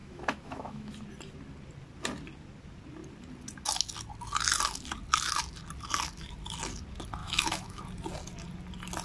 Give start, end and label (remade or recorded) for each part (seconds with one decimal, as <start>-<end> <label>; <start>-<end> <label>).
0.0-0.9 remade; 0.9-7.2 recorded; 7.2-7.8 remade; 7.8-9.0 recorded